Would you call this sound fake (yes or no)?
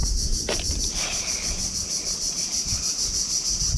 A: no